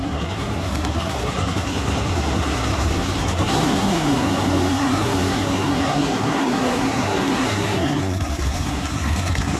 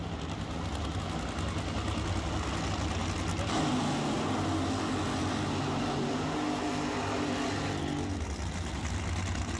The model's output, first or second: first